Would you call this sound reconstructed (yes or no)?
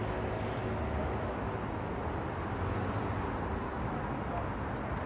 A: no